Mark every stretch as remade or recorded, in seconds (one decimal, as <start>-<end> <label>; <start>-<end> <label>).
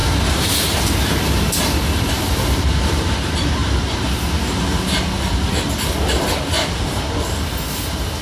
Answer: 0.0-0.8 remade; 0.8-8.2 recorded